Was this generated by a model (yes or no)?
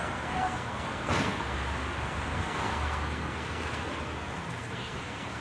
yes